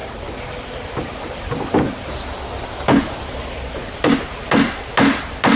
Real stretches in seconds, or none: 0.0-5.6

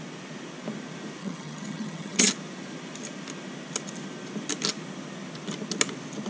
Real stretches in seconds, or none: 0.0-1.2; 2.3-6.3

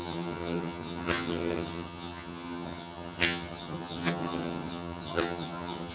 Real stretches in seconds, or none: none